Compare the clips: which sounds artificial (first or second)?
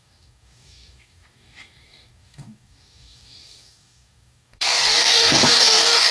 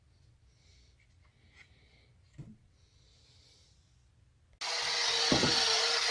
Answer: first